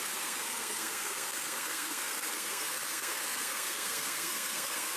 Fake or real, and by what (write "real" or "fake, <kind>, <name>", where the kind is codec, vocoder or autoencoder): fake, codec, SNAC